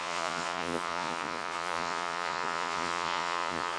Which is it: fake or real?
fake